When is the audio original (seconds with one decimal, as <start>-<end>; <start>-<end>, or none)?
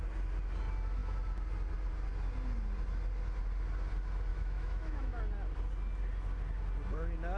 0.0-4.3; 5.2-7.4